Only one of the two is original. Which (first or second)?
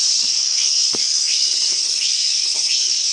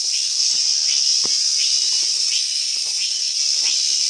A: second